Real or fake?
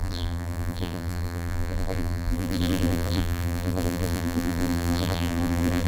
fake